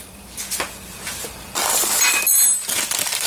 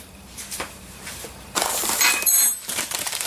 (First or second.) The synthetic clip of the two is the second